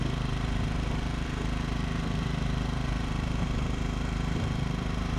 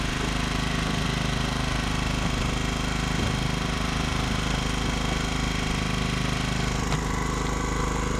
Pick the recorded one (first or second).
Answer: second